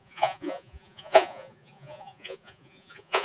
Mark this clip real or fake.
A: fake